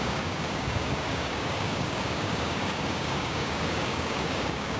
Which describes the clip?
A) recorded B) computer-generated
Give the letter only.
B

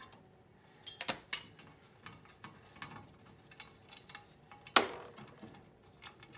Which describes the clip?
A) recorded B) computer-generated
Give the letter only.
A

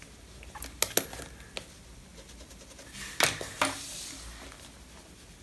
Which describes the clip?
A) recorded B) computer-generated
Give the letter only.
A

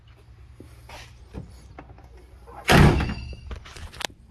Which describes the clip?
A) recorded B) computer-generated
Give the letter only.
A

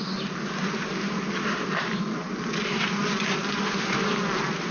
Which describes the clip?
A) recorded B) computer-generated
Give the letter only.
A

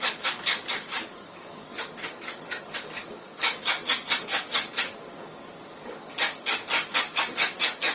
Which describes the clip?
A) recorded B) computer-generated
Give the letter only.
B